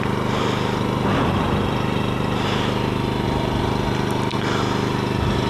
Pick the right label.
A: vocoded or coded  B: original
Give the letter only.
B